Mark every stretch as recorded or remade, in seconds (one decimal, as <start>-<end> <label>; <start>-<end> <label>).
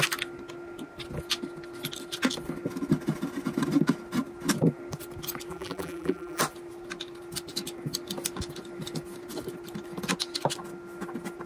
0.0-5.5 recorded; 5.5-6.4 remade; 6.4-11.5 recorded